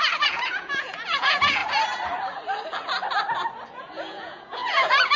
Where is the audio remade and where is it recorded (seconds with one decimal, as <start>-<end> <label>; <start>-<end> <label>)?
0.0-1.6 remade; 1.6-3.7 recorded; 3.7-5.2 remade